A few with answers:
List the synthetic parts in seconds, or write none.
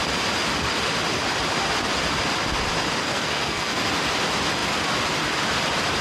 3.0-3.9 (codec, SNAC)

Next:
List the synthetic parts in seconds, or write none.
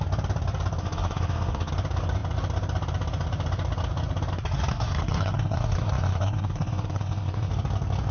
0.8-1.7 (codec, SNAC); 4.7-7.5